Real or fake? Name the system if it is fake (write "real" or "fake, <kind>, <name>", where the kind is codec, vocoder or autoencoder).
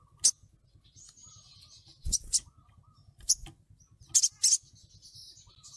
real